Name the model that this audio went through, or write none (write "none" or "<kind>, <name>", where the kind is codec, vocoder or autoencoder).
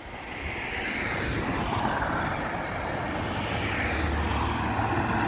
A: none